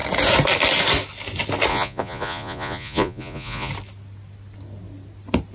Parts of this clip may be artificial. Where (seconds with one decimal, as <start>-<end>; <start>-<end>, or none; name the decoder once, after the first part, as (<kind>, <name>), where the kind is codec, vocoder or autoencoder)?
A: 1.7-3.7 (vocoder, Vocos)